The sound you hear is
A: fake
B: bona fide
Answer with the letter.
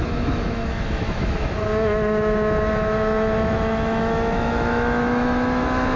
A